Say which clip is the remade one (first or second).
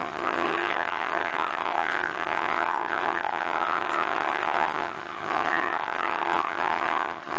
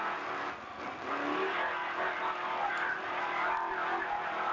first